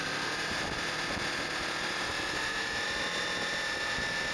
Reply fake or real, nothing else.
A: real